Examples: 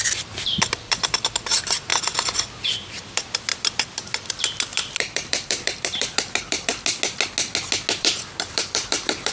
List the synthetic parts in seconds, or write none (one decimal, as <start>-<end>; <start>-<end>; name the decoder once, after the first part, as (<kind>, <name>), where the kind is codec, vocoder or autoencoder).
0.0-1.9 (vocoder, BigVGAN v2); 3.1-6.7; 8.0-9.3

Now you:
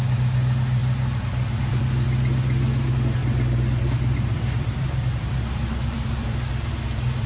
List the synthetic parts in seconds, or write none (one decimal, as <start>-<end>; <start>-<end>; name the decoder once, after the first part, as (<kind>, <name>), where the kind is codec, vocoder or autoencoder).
3.2-6.7 (vocoder, BigVGAN v2)

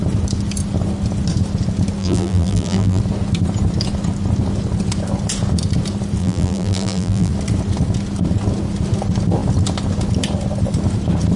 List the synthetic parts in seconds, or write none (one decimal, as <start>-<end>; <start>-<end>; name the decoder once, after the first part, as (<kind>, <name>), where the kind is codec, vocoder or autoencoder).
2.0-3.0 (vocoder, BigVGAN v2); 6.2-7.3

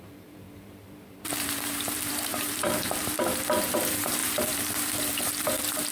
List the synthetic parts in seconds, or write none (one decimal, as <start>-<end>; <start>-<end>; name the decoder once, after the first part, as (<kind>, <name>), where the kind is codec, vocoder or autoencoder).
0.0-5.9 (vocoder, BigVGAN v2)

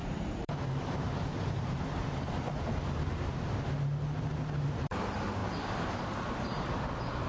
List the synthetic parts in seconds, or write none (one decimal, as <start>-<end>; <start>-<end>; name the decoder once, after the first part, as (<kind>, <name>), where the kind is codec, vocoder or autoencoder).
0.0-2.5 (vocoder, BigVGAN v2)

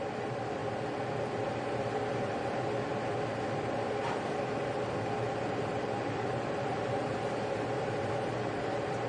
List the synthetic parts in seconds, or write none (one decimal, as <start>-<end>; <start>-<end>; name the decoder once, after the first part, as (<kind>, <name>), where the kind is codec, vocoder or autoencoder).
0.0-0.6 (vocoder, BigVGAN v2); 5.3-7.1; 7.8-9.1